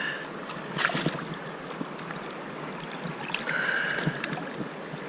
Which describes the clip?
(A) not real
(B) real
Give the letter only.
B